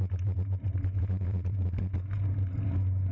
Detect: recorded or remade recorded